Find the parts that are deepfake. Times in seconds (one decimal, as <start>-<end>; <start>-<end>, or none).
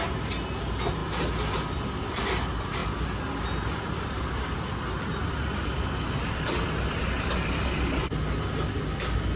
none